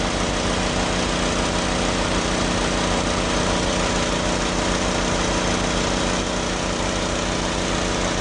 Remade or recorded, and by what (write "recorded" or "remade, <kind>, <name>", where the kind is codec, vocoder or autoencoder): recorded